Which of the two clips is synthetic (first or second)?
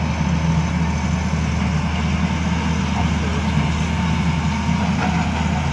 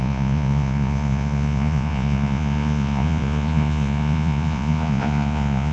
second